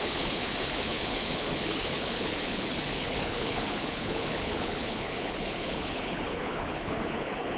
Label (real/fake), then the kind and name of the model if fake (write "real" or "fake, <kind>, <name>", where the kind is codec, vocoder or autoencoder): fake, codec, HILCodec